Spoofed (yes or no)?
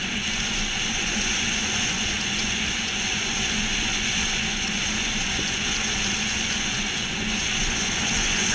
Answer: yes